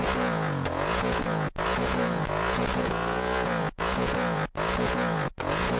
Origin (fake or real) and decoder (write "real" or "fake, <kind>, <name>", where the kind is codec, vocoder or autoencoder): fake, vocoder, Vocos